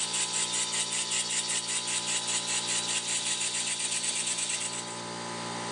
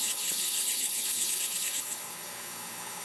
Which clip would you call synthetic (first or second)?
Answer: second